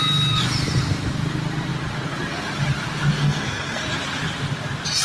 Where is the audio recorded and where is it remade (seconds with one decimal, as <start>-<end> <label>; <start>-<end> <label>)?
0.0-3.2 recorded; 3.2-3.8 remade; 3.8-5.0 recorded